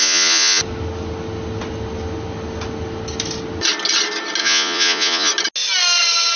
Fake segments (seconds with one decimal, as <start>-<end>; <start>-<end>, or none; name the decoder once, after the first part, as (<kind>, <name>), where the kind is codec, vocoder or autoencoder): 0.0-0.6 (vocoder, Vocos); 4.4-5.3